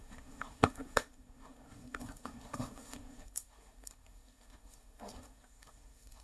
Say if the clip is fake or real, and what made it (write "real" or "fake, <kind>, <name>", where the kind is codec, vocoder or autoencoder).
fake, codec, SNAC